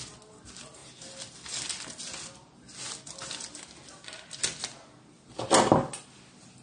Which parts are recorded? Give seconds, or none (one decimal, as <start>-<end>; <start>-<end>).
0.0-6.6